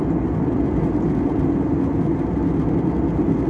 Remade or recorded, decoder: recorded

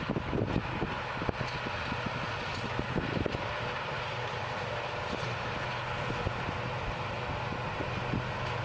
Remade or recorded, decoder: recorded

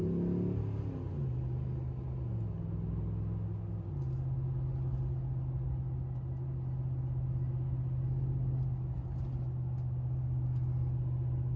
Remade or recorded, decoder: recorded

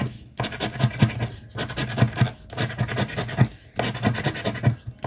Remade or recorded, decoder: recorded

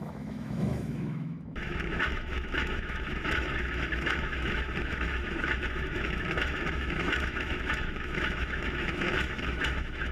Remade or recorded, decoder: remade, autoencoder, DAC-VAE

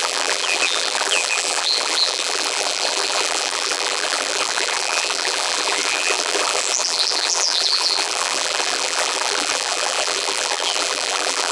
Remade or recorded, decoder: remade, vocoder, BigVGAN v2